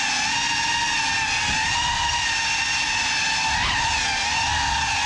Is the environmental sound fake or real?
real